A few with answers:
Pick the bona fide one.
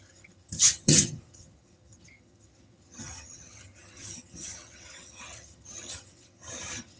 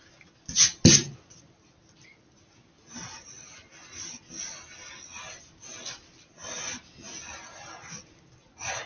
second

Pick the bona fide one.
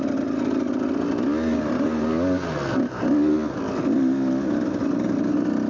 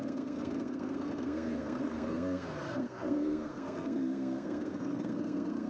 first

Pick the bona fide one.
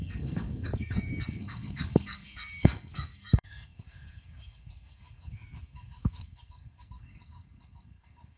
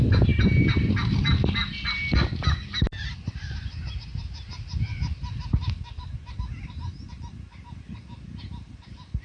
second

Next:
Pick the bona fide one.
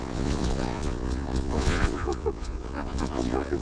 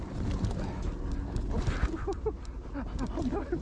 second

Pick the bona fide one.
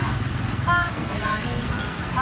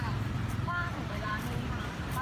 second